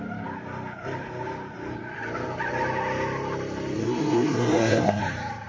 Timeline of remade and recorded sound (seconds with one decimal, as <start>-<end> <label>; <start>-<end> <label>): 0.0-3.8 recorded; 3.8-5.0 remade; 5.0-5.5 recorded